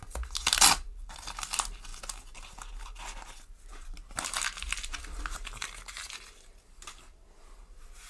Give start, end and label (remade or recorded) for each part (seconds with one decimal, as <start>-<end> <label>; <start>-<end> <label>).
0.0-8.1 recorded